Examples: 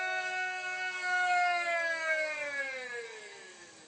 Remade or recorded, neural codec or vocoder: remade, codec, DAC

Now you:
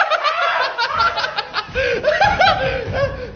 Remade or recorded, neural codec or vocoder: recorded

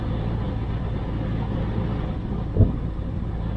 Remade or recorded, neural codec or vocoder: recorded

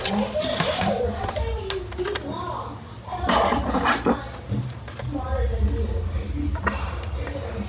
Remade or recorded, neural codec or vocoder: recorded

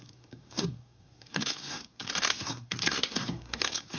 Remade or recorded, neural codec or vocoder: remade, codec, SNAC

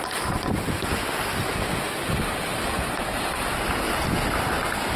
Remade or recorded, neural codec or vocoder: recorded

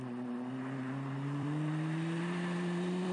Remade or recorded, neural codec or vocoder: remade, vocoder, BigVGAN v2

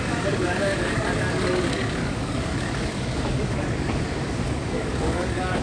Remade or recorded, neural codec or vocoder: remade, codec, DAC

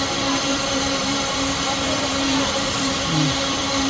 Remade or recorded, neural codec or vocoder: remade, vocoder, BigVGAN v2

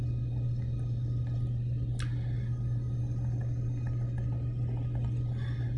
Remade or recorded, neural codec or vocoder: recorded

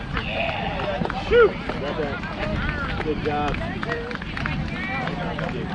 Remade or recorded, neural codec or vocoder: recorded